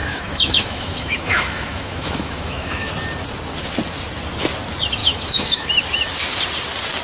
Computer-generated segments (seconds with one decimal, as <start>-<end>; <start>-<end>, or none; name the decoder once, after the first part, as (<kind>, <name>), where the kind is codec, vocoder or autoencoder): 0.0-2.9 (autoencoder, DAC-VAE); 5.0-5.7